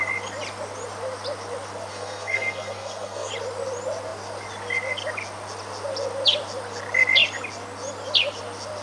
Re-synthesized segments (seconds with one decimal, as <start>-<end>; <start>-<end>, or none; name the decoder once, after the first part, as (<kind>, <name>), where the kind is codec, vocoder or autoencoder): 1.9-3.3 (codec, SNAC)